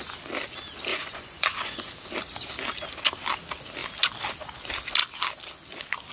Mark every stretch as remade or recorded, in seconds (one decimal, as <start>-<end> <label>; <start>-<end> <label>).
0.0-0.9 recorded; 0.9-1.9 remade; 1.9-6.1 recorded